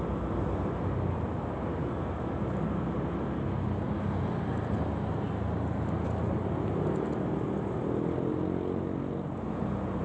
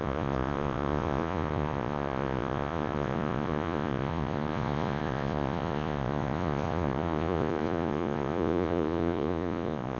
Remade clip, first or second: second